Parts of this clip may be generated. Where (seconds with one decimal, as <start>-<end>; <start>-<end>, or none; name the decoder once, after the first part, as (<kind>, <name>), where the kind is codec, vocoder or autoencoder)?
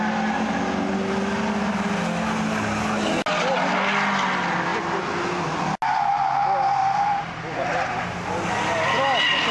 6.8-8.0 (vocoder, BigVGAN v2)